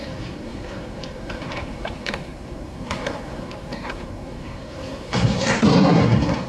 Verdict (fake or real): fake